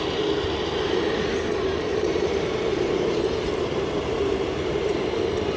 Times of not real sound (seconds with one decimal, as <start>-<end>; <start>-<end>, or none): 1.9-5.6